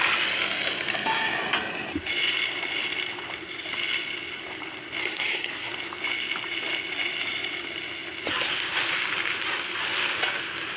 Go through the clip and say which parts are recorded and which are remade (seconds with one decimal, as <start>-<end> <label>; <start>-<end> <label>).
0.0-5.0 recorded; 5.0-5.7 remade; 5.7-10.8 recorded